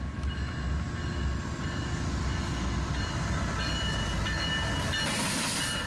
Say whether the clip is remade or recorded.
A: recorded